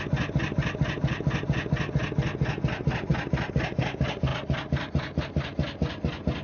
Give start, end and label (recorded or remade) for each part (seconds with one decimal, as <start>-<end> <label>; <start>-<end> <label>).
0.0-6.4 recorded